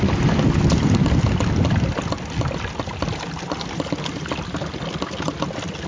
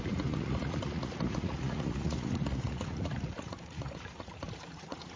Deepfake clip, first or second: second